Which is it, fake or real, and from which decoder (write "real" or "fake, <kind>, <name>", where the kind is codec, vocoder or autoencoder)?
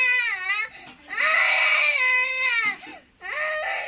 real